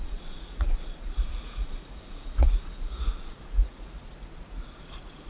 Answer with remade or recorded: remade